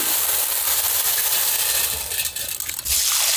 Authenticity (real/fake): real